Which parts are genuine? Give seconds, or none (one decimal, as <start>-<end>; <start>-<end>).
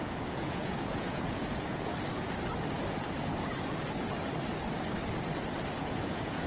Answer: 1.9-5.8